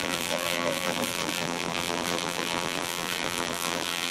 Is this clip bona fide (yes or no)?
no